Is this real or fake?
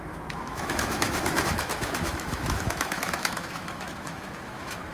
fake